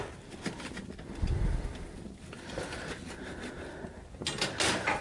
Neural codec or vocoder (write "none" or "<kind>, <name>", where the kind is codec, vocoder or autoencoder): none